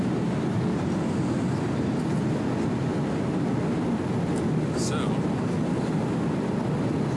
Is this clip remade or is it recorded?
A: recorded